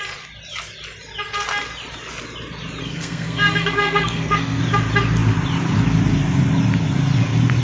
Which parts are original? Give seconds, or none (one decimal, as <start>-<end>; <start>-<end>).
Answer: 0.0-2.8; 4.6-7.6